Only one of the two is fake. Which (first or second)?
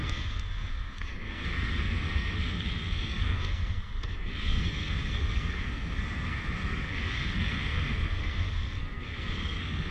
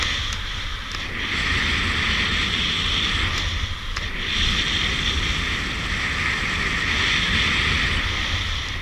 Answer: first